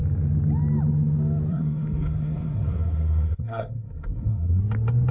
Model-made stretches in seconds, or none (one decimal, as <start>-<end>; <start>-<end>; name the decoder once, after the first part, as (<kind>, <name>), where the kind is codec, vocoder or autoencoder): 1.5-4.6 (codec, SNAC)